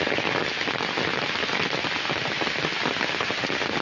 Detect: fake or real real